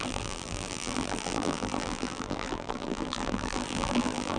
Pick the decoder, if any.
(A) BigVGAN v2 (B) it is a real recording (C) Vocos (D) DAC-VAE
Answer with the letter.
A